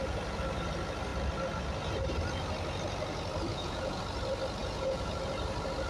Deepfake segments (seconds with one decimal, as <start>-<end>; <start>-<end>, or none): 3.5-4.0; 4.6-5.1